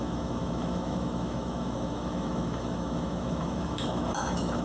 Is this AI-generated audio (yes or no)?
yes